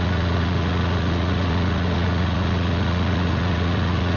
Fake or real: fake